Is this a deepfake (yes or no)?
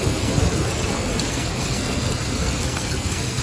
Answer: yes